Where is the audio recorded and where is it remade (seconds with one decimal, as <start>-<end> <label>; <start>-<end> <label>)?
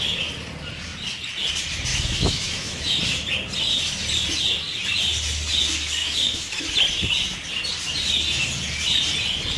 0.0-1.9 recorded; 1.9-2.8 remade; 2.8-6.0 recorded; 6.0-6.6 remade; 6.6-9.6 recorded